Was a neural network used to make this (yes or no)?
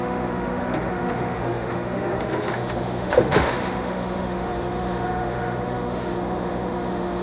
yes